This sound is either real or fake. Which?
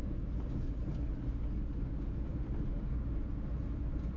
real